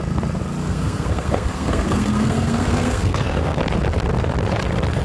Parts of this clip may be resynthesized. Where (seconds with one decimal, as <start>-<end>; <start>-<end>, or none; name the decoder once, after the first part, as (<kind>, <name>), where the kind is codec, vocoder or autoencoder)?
0.6-3.6 (codec, SNAC)